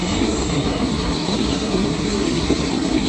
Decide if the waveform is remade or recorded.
remade